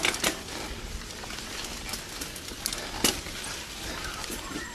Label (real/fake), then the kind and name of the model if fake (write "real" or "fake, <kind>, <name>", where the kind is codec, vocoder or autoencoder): real